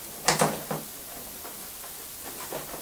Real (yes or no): yes